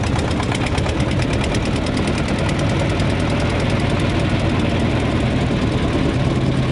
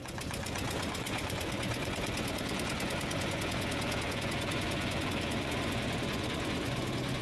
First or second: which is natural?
first